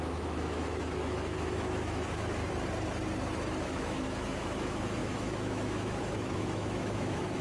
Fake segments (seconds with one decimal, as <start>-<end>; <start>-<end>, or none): 0.0-2.4; 3.6-7.4